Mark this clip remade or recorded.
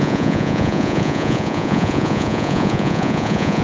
remade